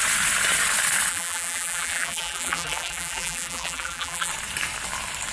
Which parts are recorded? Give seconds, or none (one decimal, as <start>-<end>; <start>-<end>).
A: 0.0-1.1; 4.3-5.3